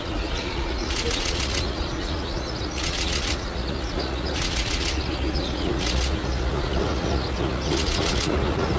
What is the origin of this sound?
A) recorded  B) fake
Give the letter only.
B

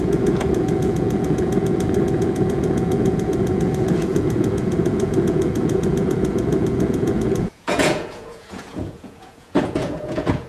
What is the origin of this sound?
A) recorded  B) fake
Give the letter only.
B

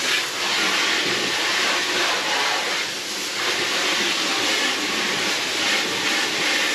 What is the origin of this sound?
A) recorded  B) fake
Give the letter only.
A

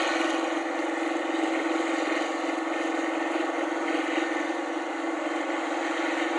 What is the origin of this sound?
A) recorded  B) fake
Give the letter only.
A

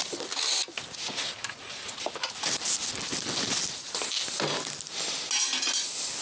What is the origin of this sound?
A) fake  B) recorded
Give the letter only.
B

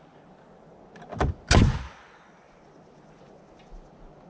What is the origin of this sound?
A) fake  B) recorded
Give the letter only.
B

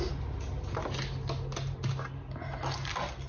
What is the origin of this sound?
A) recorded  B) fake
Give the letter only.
A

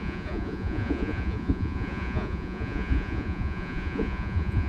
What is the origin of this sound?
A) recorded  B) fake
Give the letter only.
B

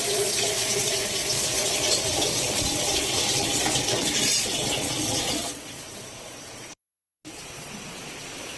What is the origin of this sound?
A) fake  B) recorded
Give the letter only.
A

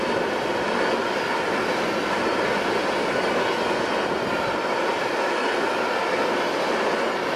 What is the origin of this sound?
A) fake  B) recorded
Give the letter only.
B